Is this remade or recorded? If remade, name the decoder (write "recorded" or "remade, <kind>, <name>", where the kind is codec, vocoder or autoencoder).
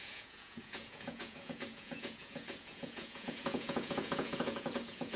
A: remade, vocoder, Vocos